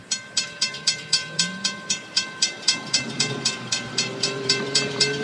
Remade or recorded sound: remade